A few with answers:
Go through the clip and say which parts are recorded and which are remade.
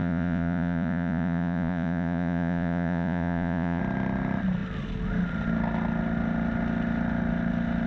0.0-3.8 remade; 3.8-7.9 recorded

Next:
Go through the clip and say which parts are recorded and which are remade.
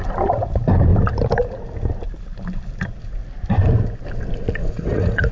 0.0-4.6 recorded; 4.6-5.3 remade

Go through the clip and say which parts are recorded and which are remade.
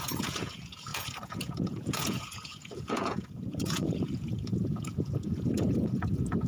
0.0-6.5 remade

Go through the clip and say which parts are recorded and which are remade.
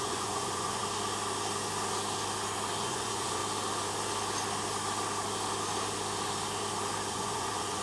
0.0-0.8 remade; 0.8-2.8 recorded; 2.8-3.4 remade; 3.4-7.1 recorded; 7.1-7.8 remade